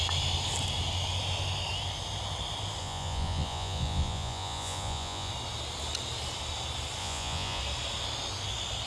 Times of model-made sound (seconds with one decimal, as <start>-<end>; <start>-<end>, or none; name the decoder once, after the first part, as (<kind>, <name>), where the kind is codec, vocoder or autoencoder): 2.8-5.3 (vocoder, Vocos); 7.0-7.6

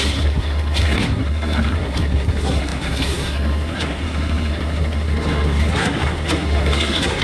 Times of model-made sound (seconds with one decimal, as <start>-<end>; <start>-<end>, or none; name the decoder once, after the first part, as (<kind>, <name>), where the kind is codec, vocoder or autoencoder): 0.0-7.2 (codec, SNAC)

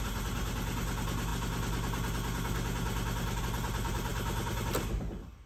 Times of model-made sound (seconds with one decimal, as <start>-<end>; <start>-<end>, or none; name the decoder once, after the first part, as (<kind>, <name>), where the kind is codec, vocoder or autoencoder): none

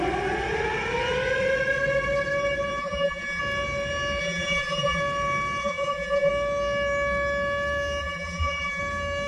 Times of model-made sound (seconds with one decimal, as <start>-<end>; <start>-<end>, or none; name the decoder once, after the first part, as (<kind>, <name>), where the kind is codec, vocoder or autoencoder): 2.8-3.4 (vocoder, BigVGAN v2); 4.2-5.0; 5.6-6.3; 8.0-8.8